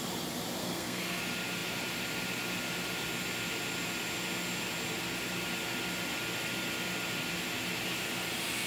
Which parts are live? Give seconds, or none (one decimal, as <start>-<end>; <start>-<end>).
0.0-0.6; 1.2-8.7